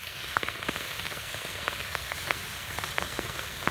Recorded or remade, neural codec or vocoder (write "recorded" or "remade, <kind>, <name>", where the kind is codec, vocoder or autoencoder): remade, codec, SNAC